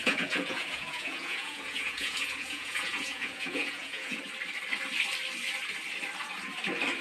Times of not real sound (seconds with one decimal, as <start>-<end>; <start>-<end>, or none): 0.0-4.2